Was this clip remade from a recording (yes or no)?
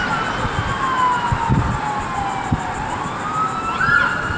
no